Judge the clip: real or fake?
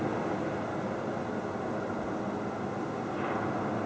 real